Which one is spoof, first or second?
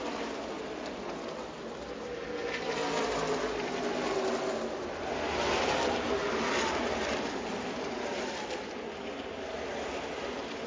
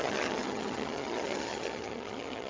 second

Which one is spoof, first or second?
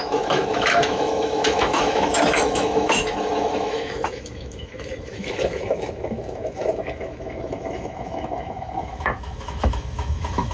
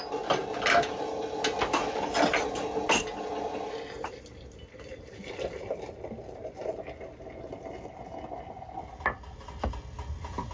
first